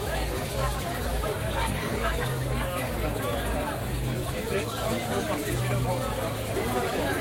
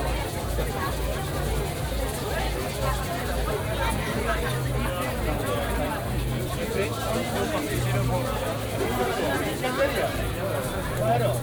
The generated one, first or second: first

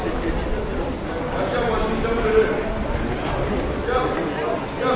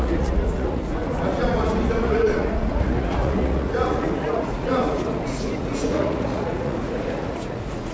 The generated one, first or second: second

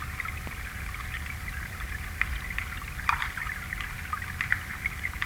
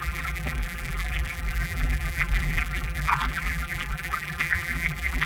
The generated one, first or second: second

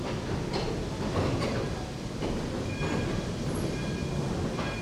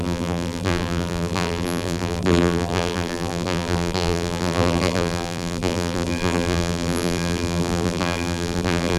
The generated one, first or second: second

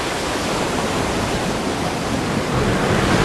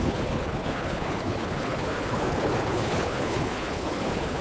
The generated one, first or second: second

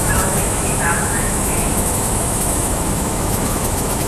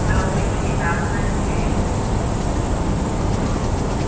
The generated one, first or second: first